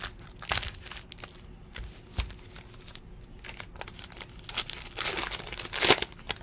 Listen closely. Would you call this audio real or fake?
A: real